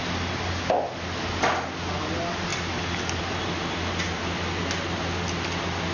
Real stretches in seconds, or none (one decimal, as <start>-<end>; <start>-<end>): 0.0-5.9